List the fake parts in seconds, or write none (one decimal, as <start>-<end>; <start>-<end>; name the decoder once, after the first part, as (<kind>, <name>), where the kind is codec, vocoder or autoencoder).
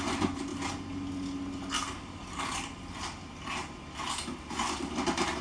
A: none